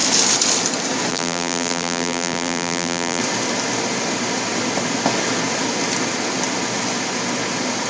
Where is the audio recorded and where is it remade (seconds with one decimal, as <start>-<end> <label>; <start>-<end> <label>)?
0.0-1.1 recorded; 1.1-3.2 remade; 3.2-7.9 recorded